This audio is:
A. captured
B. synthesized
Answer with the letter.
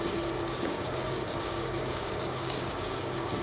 B